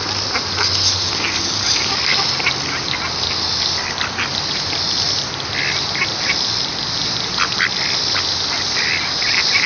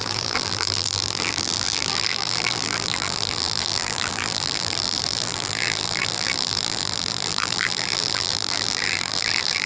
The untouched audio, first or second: first